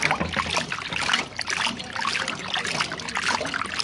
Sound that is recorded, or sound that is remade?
recorded